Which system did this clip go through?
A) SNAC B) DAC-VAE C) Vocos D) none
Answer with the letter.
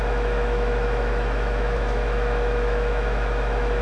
B